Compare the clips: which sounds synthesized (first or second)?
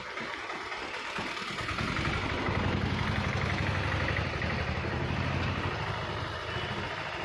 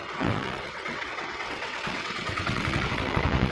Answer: second